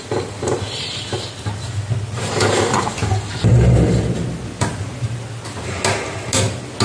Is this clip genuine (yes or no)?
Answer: yes